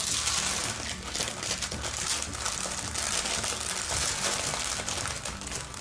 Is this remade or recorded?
recorded